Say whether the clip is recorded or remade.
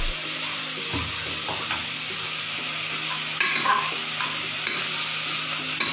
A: recorded